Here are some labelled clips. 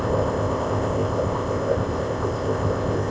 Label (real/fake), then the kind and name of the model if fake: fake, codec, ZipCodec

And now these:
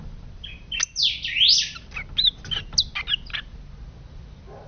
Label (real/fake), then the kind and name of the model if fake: real